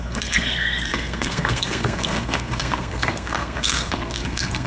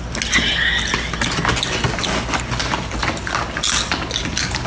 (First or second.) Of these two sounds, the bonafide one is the second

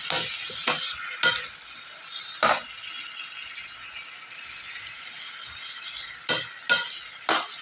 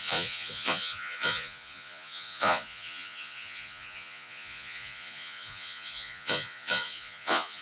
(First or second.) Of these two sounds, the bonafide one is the first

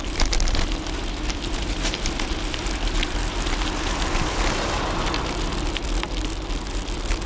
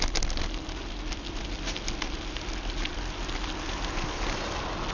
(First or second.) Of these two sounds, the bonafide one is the second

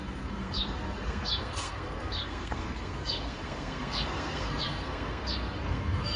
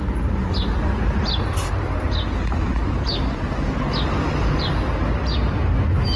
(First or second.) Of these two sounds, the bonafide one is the second